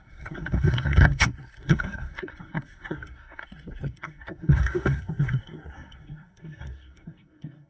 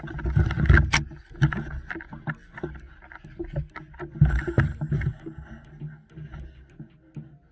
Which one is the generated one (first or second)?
first